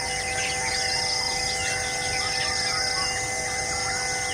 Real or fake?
real